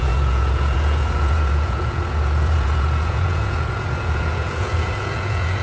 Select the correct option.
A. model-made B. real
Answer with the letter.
A